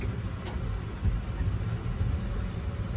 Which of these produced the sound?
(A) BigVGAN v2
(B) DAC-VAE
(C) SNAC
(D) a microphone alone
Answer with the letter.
D